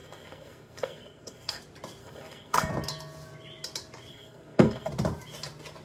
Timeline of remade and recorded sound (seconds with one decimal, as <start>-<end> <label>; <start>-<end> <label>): 0.0-1.6 remade; 1.6-2.0 recorded; 2.0-2.7 remade; 2.7-4.1 recorded; 4.1-4.9 remade; 4.9-5.8 recorded